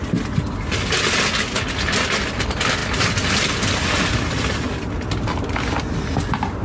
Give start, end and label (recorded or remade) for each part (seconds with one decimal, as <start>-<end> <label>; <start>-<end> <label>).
0.0-6.6 recorded